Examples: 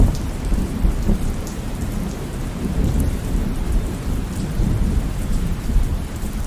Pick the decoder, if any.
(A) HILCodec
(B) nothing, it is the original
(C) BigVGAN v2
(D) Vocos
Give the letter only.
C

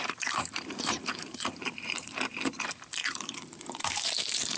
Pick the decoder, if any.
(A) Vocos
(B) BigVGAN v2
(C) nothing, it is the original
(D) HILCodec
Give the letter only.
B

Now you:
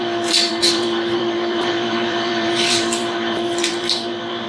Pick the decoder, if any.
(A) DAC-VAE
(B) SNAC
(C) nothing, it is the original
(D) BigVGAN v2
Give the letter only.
D